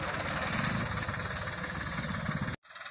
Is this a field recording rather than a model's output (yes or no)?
yes